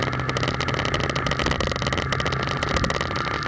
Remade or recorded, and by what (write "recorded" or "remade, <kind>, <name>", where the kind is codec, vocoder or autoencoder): recorded